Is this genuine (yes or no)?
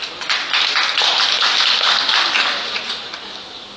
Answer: yes